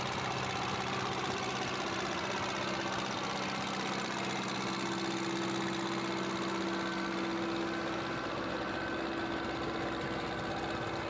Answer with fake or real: real